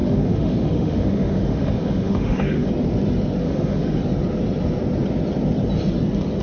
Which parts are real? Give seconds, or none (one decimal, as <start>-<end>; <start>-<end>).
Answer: 2.7-3.4; 4.0-6.4